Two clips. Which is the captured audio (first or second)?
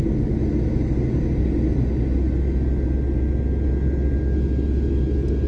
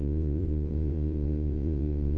first